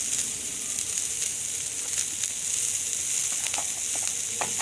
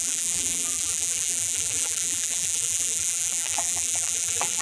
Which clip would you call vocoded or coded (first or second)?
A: second